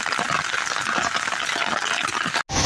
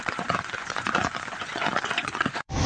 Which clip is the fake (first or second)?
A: second